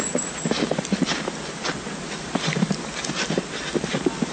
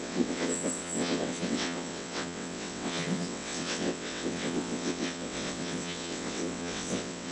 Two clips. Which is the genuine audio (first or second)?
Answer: first